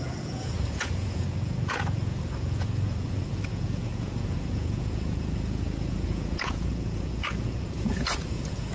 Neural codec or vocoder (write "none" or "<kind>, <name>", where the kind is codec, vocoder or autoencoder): vocoder, Vocos